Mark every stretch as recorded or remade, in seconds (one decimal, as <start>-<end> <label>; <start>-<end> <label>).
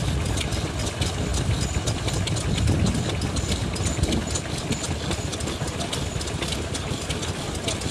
0.0-1.3 recorded; 1.3-2.1 remade; 2.1-7.9 recorded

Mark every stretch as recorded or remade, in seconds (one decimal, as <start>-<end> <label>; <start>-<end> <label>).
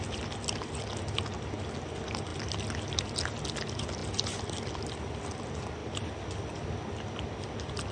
0.0-7.9 recorded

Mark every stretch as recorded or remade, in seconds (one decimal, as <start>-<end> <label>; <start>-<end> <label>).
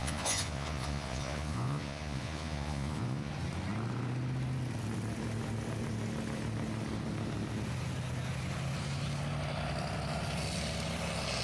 0.0-3.3 remade; 3.3-11.4 recorded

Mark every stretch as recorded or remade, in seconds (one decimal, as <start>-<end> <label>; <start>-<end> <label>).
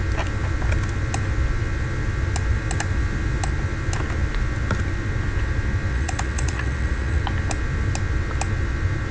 0.0-5.9 recorded; 5.9-7.2 remade; 7.2-9.1 recorded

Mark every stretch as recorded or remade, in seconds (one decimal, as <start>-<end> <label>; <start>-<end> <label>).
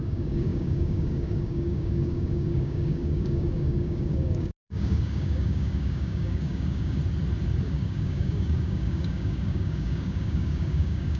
0.0-7.0 remade; 7.0-7.6 recorded; 7.6-11.2 remade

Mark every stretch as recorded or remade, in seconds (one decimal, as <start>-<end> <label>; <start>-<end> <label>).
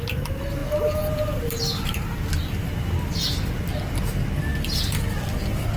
0.0-5.8 recorded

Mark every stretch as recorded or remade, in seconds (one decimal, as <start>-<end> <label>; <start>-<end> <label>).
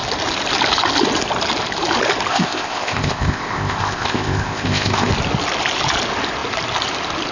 0.0-2.3 recorded; 2.3-5.1 remade; 5.1-7.3 recorded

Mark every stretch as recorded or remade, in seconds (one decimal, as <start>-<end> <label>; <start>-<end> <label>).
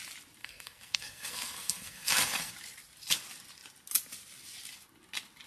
0.0-0.4 recorded; 0.4-2.5 remade; 2.5-5.5 recorded